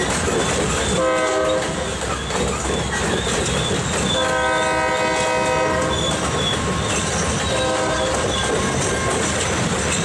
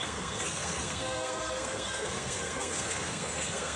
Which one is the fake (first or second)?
second